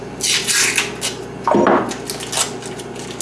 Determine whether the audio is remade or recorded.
recorded